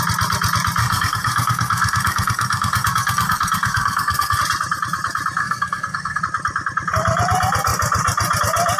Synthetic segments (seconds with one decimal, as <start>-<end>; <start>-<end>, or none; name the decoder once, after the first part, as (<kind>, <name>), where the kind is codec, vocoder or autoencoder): 0.8-4.4 (codec, SNAC); 5.4-6.2